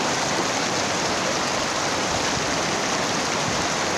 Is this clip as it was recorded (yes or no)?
yes